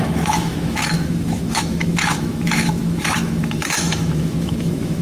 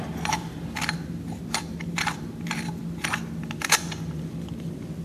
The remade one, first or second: first